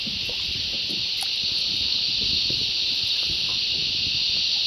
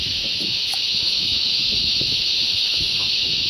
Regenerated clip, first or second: second